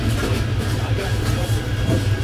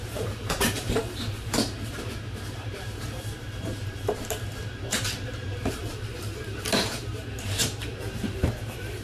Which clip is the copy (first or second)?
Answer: second